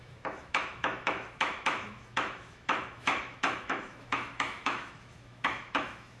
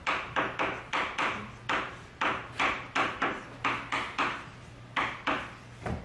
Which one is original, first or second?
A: second